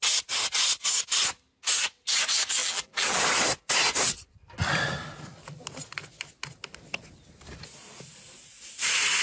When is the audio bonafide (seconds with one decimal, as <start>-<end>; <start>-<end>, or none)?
0.0-2.6; 3.2-9.2